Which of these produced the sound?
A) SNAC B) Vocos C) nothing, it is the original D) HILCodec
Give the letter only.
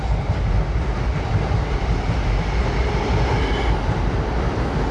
C